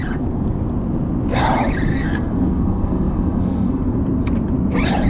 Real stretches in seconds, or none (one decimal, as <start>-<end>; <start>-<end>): 0.0-1.9; 4.0-5.1